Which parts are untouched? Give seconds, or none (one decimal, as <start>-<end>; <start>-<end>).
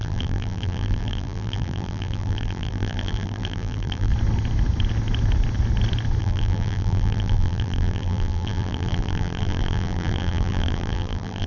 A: 4.1-6.2